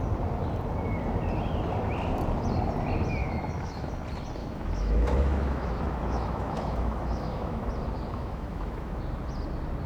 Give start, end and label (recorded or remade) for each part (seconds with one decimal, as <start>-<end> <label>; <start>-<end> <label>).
0.0-3.2 recorded; 3.2-3.9 remade; 3.9-4.4 recorded; 4.4-7.7 remade; 7.7-8.1 recorded; 8.1-9.0 remade; 9.0-9.9 recorded